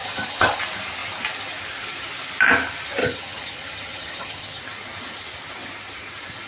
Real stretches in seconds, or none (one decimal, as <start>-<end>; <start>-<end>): 0.6-3.0; 4.6-6.5